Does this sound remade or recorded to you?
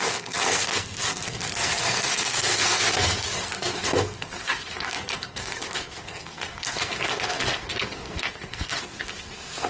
remade